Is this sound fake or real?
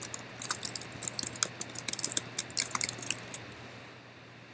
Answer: real